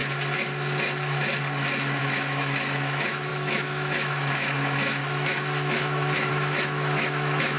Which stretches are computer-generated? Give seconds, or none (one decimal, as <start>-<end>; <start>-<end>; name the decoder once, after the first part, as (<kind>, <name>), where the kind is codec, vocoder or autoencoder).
2.0-7.6 (autoencoder, DAC-VAE)